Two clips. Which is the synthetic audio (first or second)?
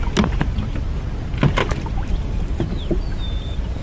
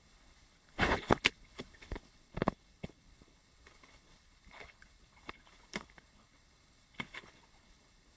second